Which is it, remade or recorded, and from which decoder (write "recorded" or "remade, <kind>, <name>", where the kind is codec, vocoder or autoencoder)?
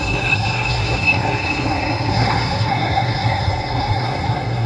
remade, codec, SNAC